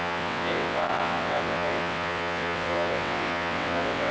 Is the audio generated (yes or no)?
yes